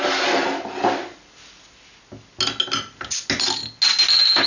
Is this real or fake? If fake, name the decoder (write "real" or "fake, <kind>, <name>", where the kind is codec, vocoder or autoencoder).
real